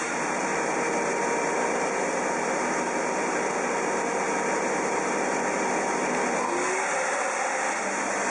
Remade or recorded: recorded